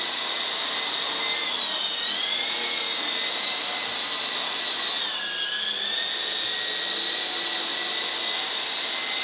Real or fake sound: real